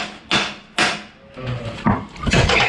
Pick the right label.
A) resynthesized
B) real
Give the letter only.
B